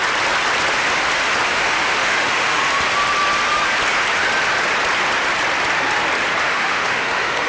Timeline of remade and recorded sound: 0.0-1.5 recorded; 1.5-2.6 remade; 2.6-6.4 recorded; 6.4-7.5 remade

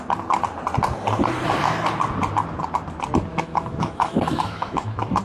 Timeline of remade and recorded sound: 0.0-3.3 recorded; 3.3-5.2 remade

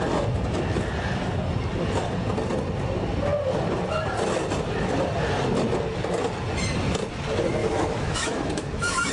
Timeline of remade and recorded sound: 0.0-7.6 recorded; 7.6-9.1 remade

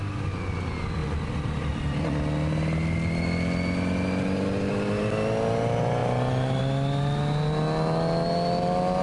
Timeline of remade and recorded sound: 0.0-9.0 recorded

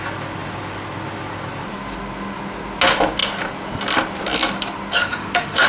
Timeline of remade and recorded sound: 0.0-5.0 recorded; 5.0-5.7 remade

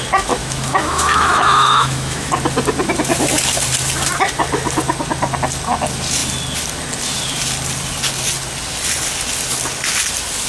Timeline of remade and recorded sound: 0.0-0.4 recorded; 0.4-2.3 remade; 2.3-10.5 recorded

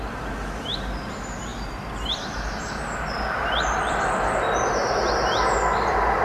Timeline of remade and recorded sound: 0.0-6.2 recorded